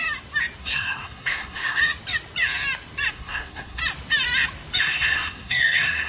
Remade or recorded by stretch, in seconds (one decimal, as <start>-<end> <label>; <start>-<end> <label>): 0.0-0.6 recorded; 0.6-1.8 remade; 1.8-3.1 recorded; 3.1-3.8 remade; 3.8-4.8 recorded; 4.8-6.1 remade